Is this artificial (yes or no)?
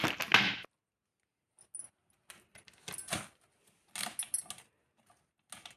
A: no